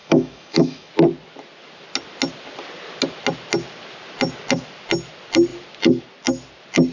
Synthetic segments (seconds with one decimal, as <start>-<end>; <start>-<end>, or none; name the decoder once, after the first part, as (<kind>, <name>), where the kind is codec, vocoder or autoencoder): 0.0-0.9 (autoencoder, DAC-VAE)